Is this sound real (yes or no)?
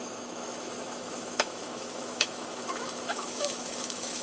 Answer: no